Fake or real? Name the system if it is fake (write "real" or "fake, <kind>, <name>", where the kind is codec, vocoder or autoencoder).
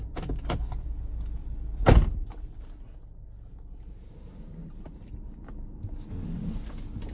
real